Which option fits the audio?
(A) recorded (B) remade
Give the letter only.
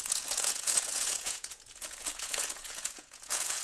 B